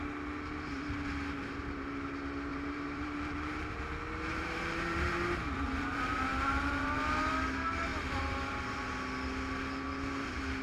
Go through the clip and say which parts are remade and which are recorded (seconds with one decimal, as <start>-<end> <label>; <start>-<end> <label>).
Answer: 0.0-2.5 recorded; 2.5-3.6 remade; 3.6-4.3 recorded; 4.3-7.3 remade; 7.3-7.9 recorded; 7.9-8.6 remade; 8.6-10.6 recorded